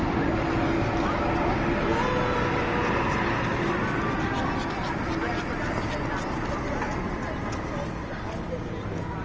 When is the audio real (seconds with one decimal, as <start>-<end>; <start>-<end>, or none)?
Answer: 0.0-9.2